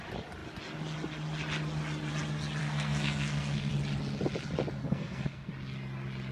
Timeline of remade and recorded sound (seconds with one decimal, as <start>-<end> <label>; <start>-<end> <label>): 0.0-2.6 recorded; 2.6-3.7 remade; 3.7-4.8 recorded; 4.8-5.5 remade; 5.5-6.3 recorded